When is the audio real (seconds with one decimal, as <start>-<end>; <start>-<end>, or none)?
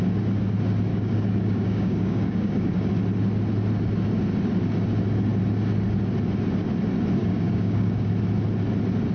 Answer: 0.0-0.9; 2.9-7.2; 8.1-9.1